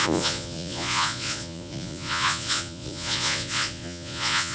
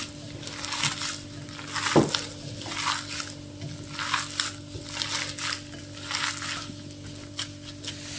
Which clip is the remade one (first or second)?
first